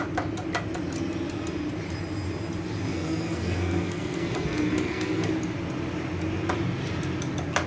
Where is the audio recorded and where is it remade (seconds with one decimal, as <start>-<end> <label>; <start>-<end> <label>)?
0.0-2.9 recorded; 2.9-5.3 remade; 5.3-7.7 recorded